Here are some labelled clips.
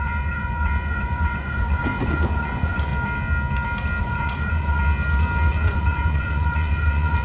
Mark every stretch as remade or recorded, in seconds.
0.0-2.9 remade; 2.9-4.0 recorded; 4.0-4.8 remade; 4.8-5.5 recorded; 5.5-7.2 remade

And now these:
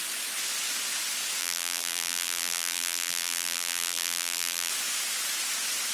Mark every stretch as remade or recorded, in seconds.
0.0-1.4 recorded; 1.4-4.7 remade; 4.7-5.9 recorded

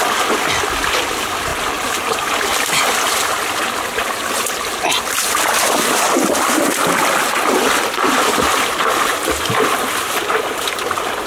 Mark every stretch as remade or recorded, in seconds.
0.0-11.3 recorded

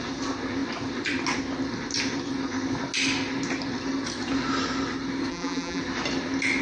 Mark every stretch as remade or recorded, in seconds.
0.0-5.3 recorded; 5.3-5.8 remade; 5.8-6.6 recorded

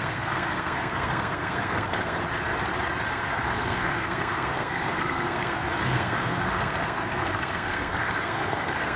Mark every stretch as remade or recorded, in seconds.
0.0-2.2 remade; 2.2-3.1 recorded; 3.1-9.0 remade